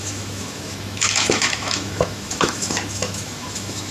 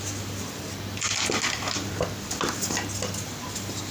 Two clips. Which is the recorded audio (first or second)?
second